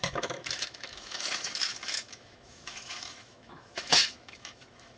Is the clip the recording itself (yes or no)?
no